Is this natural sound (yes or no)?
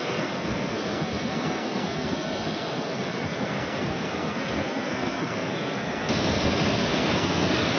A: no